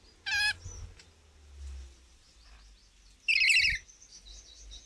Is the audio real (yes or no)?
yes